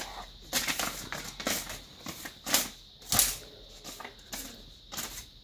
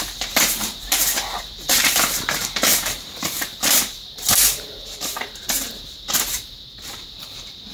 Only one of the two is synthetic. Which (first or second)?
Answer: second